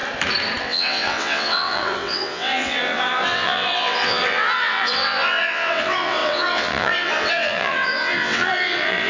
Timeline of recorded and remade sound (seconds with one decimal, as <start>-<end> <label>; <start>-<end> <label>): 0.0-0.6 recorded; 0.6-9.1 remade